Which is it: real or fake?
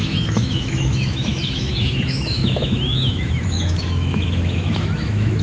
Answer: fake